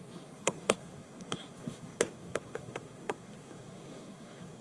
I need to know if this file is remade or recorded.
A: remade